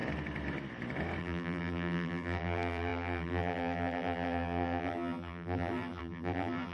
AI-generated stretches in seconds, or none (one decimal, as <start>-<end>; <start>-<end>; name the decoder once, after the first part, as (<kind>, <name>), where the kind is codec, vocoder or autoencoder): 1.2-6.7 (vocoder, BigVGAN v2)